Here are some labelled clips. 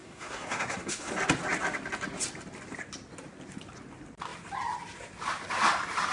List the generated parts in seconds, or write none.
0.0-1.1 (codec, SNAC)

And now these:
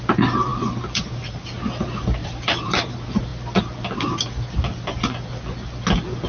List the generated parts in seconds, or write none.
2.2-2.9 (vocoder, BigVGAN v2)

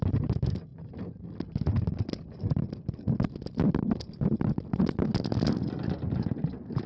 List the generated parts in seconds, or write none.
none

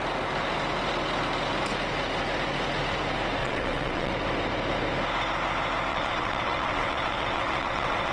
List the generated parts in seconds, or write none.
3.4-4.1 (vocoder, WaveNeXt); 5.9-8.1

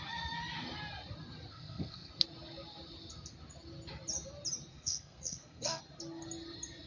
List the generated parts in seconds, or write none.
1.5-2.1 (codec, SNAC); 4.7-5.8